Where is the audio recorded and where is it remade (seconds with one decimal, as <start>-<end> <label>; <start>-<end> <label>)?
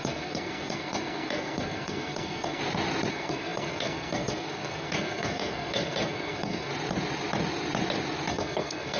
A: 0.0-2.6 remade; 2.6-3.1 recorded; 3.1-6.7 remade; 6.7-8.3 recorded; 8.3-9.0 remade